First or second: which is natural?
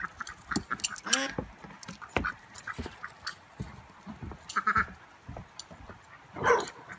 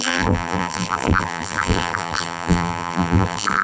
first